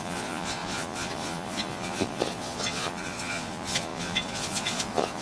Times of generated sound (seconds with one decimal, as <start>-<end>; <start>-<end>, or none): 0.0-5.2